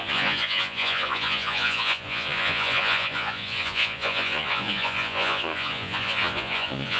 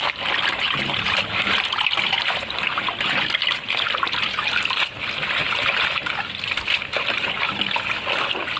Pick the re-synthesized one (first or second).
first